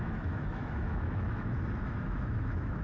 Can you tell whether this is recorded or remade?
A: remade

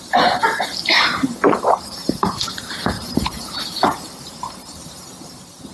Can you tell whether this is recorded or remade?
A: remade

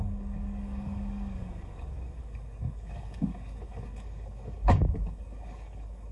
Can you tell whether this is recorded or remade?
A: remade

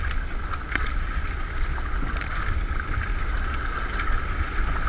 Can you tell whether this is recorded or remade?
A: recorded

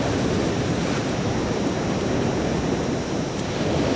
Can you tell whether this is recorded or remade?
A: recorded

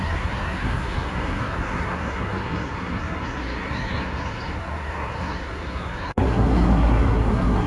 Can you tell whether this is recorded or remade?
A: remade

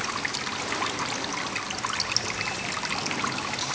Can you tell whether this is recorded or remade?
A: recorded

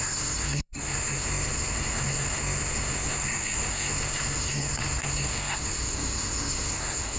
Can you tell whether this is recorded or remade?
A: remade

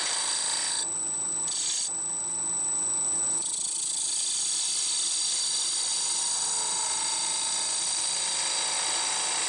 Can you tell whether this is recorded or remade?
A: recorded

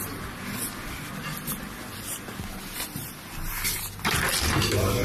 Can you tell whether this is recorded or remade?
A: recorded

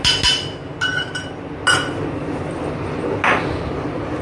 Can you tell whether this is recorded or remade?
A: recorded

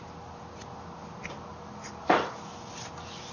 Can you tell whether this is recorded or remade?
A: recorded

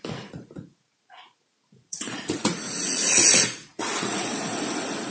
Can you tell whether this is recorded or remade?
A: remade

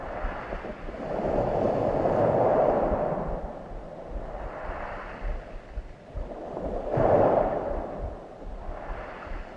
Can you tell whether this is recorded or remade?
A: recorded